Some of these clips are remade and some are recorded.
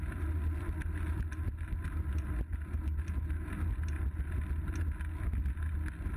recorded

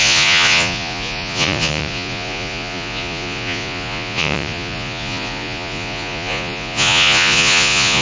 remade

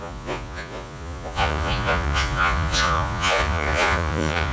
remade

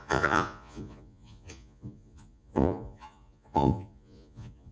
remade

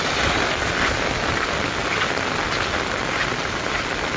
recorded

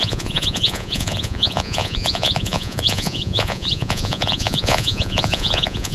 remade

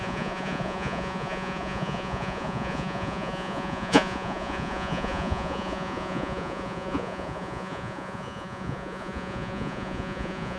remade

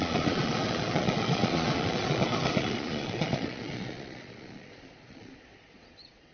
remade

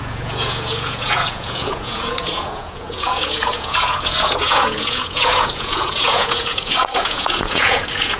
remade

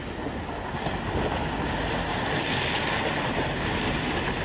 recorded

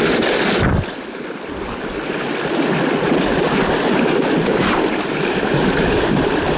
recorded